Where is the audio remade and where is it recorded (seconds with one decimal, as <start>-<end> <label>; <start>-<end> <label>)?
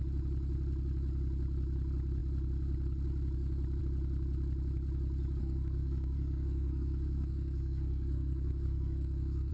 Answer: 0.0-5.4 recorded; 5.4-9.5 remade